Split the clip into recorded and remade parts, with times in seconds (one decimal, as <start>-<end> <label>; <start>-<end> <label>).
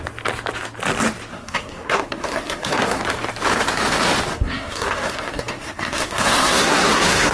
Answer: 0.0-1.3 recorded; 1.3-3.0 remade; 3.0-4.3 recorded; 4.3-7.3 remade